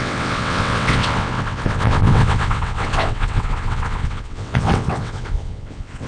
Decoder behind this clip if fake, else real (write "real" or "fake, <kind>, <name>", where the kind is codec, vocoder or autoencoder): fake, vocoder, WaveNeXt